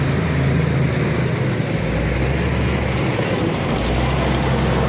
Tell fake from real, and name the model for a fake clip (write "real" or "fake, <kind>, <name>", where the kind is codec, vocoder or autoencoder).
real